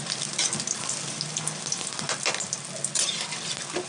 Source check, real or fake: real